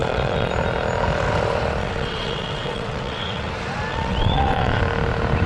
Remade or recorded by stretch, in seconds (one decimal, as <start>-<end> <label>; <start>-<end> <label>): 0.0-0.5 remade; 0.5-1.8 recorded; 1.8-3.5 remade; 3.5-3.9 recorded; 3.9-4.8 remade; 4.8-5.5 recorded